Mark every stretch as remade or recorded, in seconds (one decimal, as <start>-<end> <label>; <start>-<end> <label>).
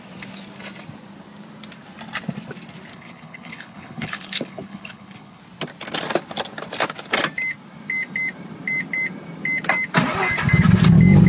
0.0-2.9 recorded; 2.9-5.4 remade; 5.4-11.3 recorded